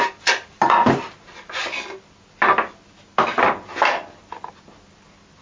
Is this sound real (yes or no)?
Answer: yes